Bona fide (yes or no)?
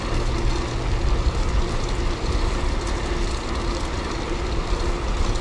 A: yes